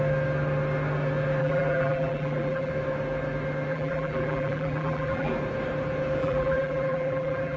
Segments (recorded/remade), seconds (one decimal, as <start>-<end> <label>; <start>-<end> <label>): 0.0-1.4 recorded; 1.4-2.7 remade; 2.7-3.7 recorded; 3.7-5.3 remade; 5.3-6.2 recorded; 6.2-7.6 remade